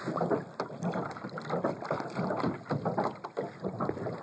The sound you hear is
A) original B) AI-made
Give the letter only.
A